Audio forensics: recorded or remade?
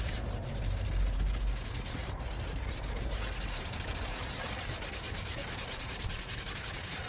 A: remade